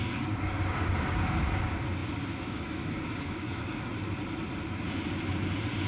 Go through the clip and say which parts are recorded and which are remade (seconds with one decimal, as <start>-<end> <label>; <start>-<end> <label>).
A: 0.0-3.9 remade; 3.9-5.9 recorded

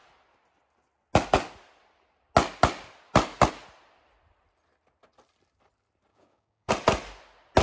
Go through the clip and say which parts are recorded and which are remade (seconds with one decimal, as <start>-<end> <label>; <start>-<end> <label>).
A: 0.0-6.1 recorded; 6.1-6.7 remade; 6.7-7.6 recorded

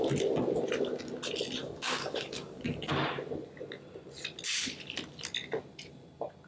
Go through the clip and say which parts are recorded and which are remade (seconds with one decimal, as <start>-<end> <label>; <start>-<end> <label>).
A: 0.0-1.6 recorded; 1.6-2.9 remade; 2.9-6.5 recorded